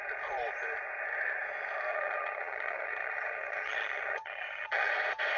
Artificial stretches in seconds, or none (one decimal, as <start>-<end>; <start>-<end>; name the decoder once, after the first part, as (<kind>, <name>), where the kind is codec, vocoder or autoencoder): 1.9-4.9 (vocoder, HiFi-GAN)